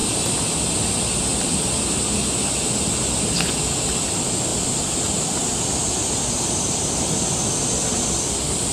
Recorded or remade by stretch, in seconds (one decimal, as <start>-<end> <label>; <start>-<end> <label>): 0.0-4.5 recorded; 4.5-8.7 remade